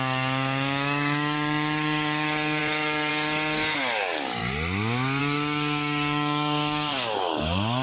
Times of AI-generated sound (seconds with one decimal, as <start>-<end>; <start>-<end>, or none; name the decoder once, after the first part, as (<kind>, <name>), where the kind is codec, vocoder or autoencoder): 0.0-4.4 (codec, DAC); 5.2-7.8